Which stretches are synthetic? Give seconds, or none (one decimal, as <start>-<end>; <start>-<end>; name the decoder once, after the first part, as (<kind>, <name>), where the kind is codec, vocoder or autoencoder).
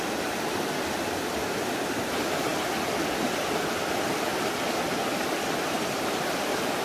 none